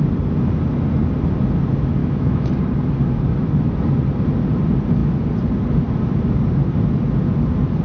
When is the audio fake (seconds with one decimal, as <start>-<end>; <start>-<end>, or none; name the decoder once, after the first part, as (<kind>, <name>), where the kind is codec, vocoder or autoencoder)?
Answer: 2.0-2.5 (autoencoder, DAC-VAE)